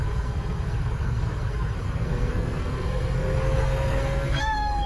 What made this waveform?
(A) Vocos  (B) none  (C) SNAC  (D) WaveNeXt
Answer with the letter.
C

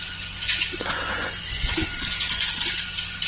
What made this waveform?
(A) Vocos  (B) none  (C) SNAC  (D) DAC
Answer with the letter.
A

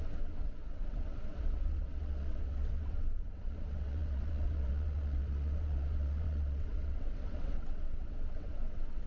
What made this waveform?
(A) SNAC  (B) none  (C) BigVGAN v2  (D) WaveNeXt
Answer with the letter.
D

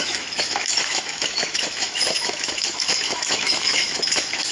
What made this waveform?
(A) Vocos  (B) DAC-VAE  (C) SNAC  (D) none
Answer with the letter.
B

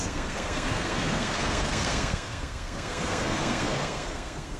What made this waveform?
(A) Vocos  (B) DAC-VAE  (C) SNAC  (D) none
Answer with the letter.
C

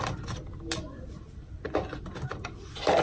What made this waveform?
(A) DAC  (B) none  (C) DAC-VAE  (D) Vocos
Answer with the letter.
B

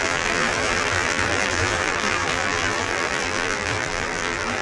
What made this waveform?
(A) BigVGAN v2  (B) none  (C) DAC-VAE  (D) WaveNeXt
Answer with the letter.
A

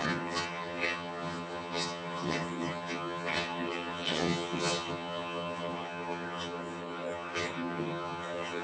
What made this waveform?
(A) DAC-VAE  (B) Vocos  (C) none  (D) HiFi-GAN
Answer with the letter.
D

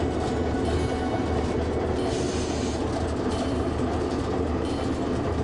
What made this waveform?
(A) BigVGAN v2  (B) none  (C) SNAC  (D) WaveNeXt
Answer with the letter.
B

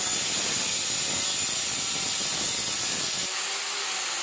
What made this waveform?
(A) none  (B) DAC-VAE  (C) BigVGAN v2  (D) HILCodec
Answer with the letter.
A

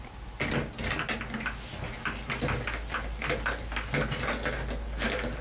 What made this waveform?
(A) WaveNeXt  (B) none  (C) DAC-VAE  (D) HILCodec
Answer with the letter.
B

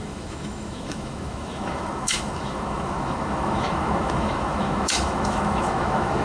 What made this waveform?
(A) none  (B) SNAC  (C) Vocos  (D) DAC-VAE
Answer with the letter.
D